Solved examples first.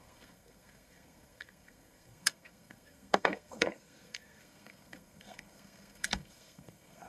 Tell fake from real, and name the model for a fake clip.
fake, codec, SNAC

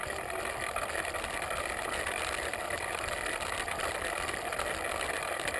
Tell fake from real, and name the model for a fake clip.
real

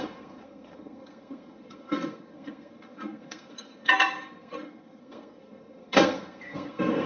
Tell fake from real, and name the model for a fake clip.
fake, codec, SNAC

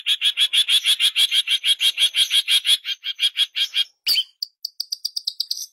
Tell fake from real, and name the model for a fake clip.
real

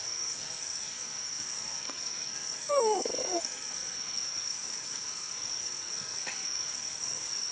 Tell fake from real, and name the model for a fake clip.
fake, codec, SNAC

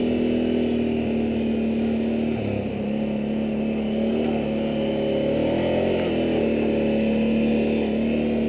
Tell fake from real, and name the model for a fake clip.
real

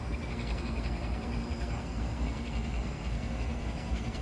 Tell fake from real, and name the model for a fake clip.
fake, codec, SNAC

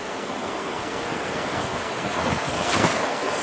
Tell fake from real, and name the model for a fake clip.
fake, codec, SNAC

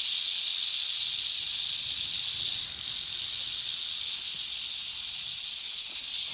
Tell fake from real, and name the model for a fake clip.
real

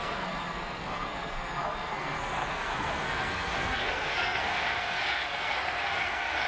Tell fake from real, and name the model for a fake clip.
fake, codec, SNAC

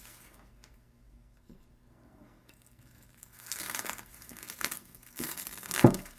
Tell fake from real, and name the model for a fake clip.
fake, codec, SNAC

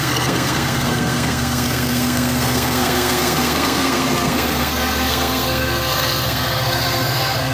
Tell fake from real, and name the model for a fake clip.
fake, codec, SNAC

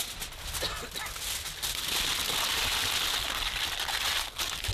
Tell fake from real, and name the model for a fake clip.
real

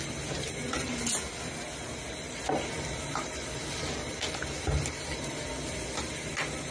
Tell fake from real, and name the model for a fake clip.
real